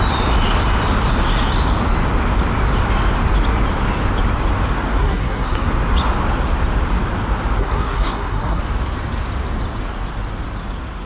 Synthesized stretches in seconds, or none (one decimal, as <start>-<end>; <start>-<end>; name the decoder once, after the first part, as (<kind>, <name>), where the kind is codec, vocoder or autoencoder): 5.0-5.7 (codec, SNAC); 7.6-8.6